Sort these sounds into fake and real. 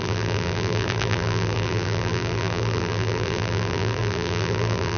fake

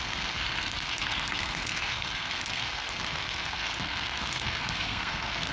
fake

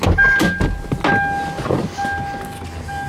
real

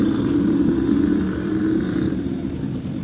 real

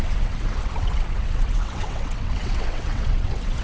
fake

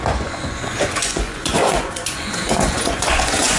fake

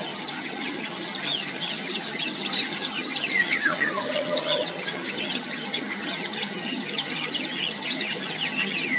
fake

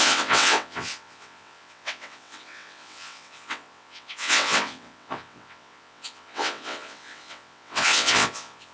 fake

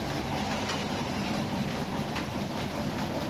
real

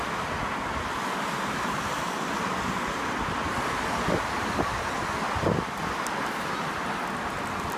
real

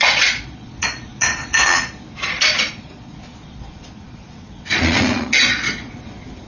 fake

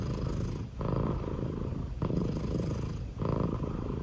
real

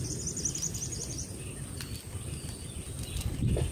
real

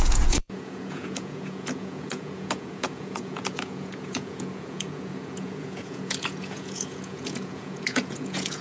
fake